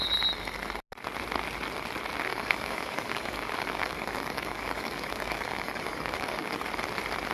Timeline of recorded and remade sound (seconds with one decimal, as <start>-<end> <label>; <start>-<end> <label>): 0.0-2.3 recorded; 2.3-6.7 remade; 6.7-7.3 recorded

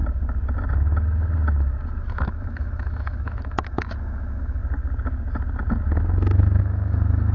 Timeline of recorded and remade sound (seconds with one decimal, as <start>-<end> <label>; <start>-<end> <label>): 0.0-2.0 recorded; 2.0-4.6 remade; 4.6-6.6 recorded; 6.6-7.3 remade

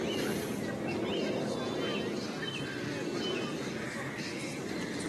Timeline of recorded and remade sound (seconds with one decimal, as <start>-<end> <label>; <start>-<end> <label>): 0.0-5.1 recorded

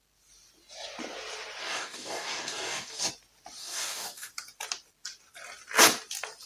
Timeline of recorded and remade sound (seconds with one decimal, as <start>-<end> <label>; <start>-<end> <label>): 0.0-1.6 recorded; 1.6-3.1 remade; 3.1-3.6 recorded; 3.6-4.3 remade; 4.3-6.5 recorded

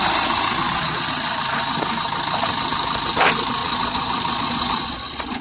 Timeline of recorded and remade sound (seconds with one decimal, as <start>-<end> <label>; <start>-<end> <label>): 0.0-0.6 recorded; 0.6-1.1 remade; 1.1-3.6 recorded; 3.6-5.4 remade

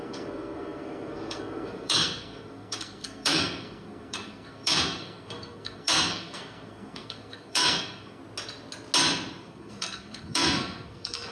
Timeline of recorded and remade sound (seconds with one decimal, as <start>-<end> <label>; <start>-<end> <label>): 0.0-8.2 remade; 8.2-9.4 recorded; 9.4-11.3 remade